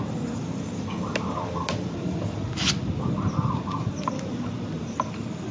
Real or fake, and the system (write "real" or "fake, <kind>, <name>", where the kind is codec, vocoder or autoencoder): real